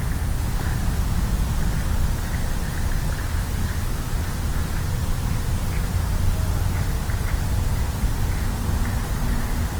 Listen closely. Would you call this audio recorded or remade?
recorded